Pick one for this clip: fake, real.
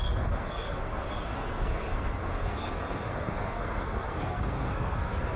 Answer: fake